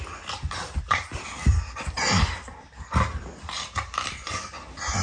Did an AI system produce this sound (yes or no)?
no